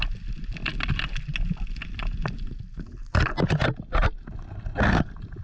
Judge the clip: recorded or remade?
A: recorded